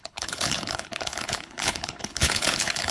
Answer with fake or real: fake